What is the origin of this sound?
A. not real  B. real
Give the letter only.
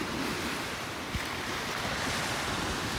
B